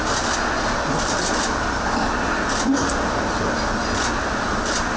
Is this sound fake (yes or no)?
no